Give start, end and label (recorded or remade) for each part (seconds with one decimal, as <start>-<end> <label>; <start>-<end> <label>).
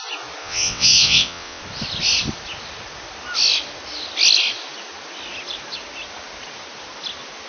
0.0-0.4 recorded; 0.4-1.6 remade; 1.6-7.5 recorded